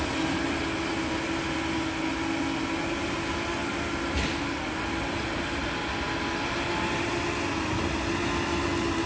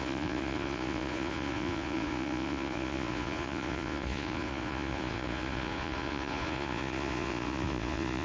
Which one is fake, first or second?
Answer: second